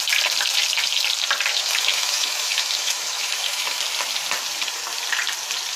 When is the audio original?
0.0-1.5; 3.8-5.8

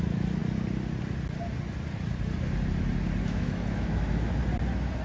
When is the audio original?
0.0-3.2; 4.4-5.0

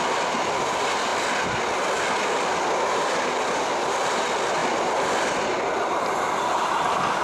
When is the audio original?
0.0-7.2

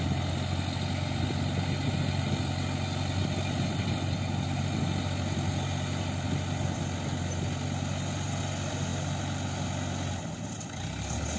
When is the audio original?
0.0-11.4

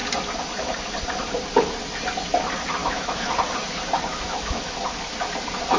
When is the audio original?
0.0-2.8; 3.4-4.1; 4.8-5.8